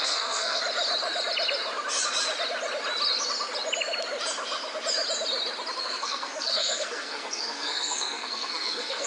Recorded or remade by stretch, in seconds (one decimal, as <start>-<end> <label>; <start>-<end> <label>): 0.0-0.6 remade; 0.6-5.8 recorded; 5.8-9.1 remade